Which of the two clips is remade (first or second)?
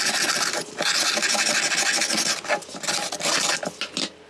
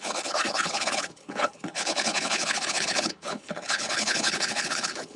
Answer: second